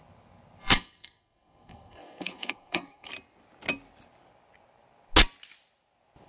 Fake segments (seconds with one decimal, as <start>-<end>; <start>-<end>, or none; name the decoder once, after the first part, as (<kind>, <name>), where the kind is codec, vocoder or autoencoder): 0.6-3.1 (codec, SNAC)